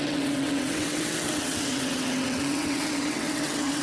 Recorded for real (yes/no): no